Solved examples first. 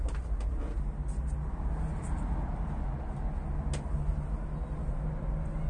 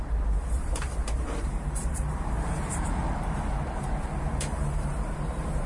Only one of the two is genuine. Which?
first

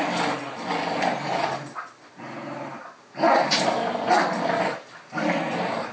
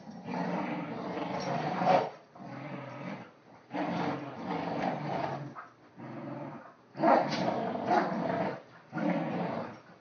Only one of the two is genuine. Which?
first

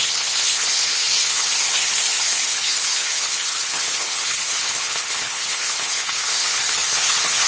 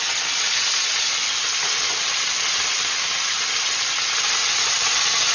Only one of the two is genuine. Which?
second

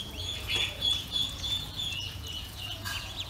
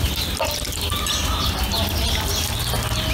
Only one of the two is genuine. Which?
second